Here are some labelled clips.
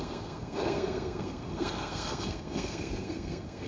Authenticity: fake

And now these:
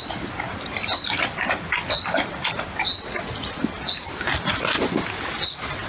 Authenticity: real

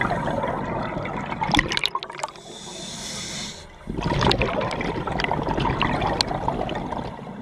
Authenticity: real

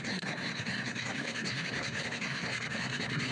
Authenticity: fake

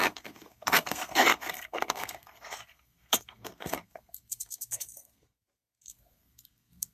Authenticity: fake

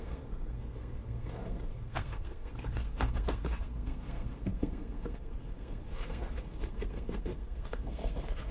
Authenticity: fake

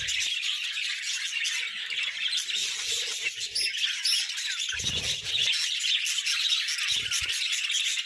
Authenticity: real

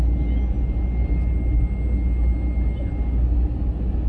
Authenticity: real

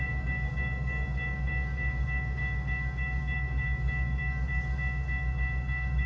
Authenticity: fake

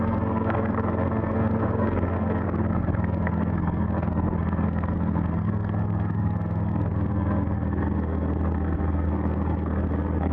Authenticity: fake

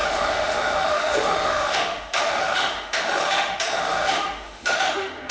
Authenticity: fake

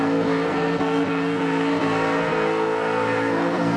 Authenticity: fake